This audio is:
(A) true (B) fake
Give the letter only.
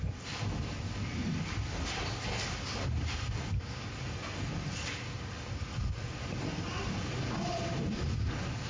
A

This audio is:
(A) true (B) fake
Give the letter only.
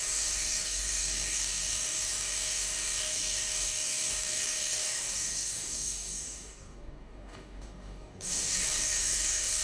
B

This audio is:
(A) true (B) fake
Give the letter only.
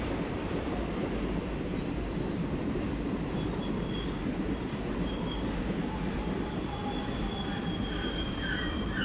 A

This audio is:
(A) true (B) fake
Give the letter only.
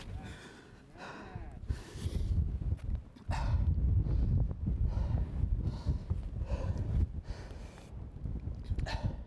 A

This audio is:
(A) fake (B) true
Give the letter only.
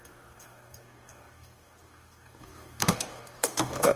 A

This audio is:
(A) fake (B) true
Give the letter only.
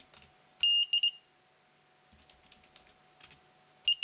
B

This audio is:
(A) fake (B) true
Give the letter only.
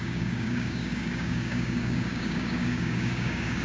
A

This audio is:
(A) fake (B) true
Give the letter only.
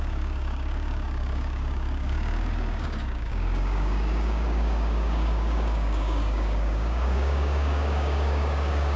A